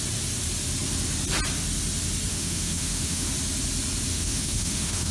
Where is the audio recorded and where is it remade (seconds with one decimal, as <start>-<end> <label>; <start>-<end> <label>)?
0.0-2.3 recorded; 2.3-3.3 remade; 3.3-4.1 recorded; 4.1-5.1 remade